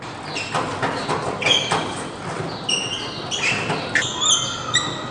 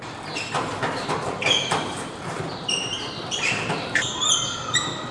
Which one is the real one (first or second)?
first